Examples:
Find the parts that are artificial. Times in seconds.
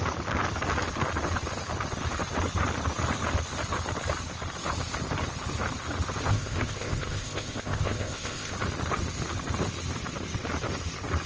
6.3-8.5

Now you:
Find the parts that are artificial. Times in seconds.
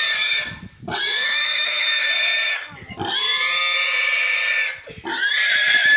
1.1-2.1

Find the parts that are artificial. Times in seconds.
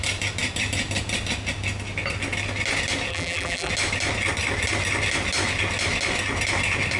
3.1-3.7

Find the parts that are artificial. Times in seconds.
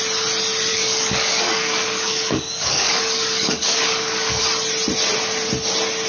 0.7-4.4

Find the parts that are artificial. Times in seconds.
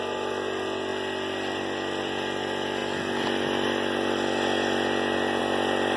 none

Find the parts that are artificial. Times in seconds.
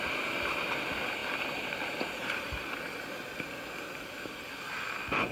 none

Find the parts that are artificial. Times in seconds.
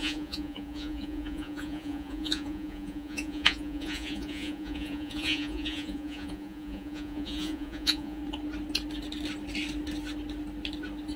0.0-8.2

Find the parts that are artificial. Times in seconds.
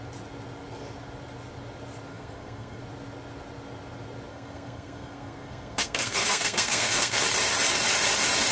2.1-2.8; 4.3-7.2